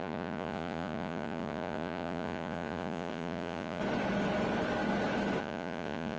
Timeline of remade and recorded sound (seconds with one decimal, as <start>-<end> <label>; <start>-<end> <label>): 0.0-3.8 remade; 3.8-5.4 recorded; 5.4-6.2 remade